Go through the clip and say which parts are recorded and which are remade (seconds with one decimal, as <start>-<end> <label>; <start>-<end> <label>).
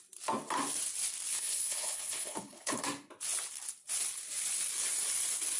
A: 0.0-1.3 recorded; 1.3-2.8 remade; 2.8-5.6 recorded